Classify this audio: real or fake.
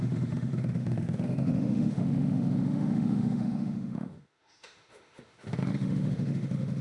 fake